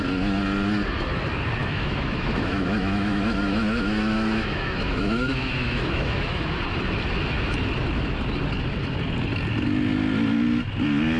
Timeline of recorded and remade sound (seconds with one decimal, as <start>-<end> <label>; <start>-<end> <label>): 0.0-1.6 recorded; 1.6-6.6 remade; 6.6-11.2 recorded